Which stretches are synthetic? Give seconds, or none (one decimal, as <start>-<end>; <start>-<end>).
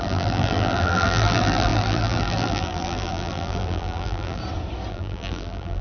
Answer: 0.0-4.4; 4.9-5.8